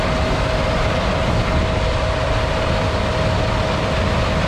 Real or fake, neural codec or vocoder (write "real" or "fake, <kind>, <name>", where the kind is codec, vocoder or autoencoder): real